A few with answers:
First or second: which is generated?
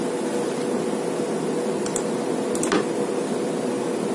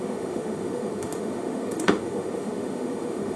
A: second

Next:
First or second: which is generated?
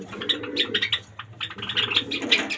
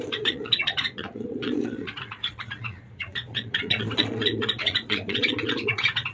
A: second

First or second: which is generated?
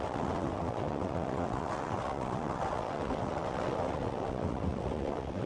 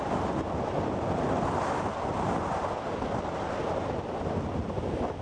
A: first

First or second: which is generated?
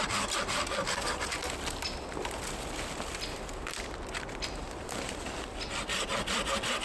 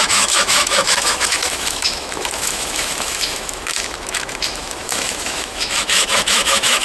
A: second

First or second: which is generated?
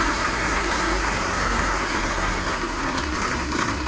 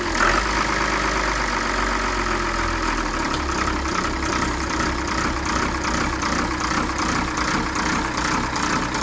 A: first